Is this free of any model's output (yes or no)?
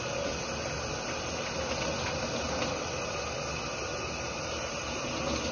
yes